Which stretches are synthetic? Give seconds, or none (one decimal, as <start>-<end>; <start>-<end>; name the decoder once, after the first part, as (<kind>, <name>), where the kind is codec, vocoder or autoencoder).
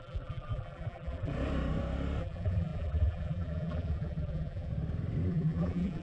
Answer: 0.0-1.3 (vocoder, BigVGAN v2); 2.2-4.7; 5.3-6.0